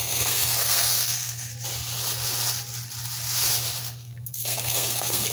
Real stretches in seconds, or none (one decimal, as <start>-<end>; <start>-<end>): 1.5-3.8